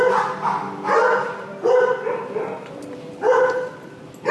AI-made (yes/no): no